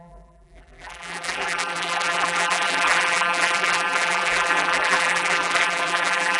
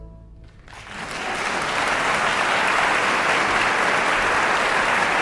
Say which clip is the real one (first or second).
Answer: second